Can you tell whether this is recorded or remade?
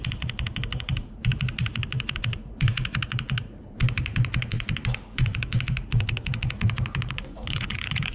remade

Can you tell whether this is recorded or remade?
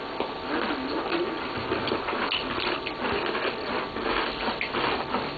recorded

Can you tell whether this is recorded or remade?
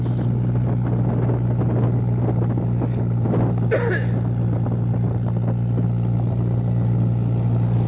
recorded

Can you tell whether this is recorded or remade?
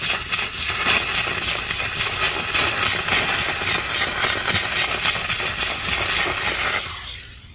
recorded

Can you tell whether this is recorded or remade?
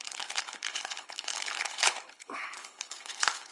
remade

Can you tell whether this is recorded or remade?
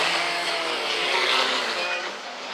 remade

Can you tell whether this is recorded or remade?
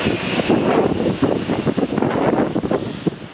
recorded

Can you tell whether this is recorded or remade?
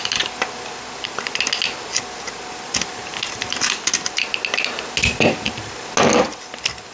recorded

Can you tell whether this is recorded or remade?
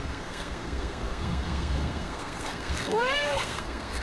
remade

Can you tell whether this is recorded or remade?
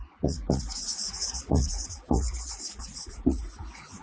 remade